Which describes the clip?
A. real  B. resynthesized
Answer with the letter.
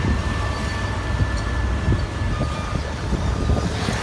A